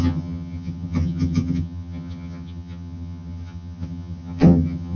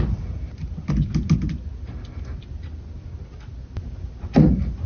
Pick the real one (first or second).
second